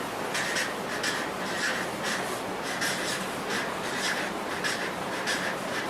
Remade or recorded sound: recorded